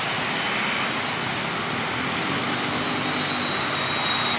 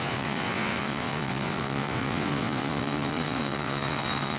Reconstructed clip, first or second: second